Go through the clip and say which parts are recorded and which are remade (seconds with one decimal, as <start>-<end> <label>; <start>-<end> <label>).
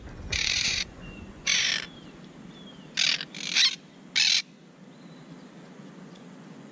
0.0-1.7 remade; 1.7-5.7 recorded; 5.7-6.7 remade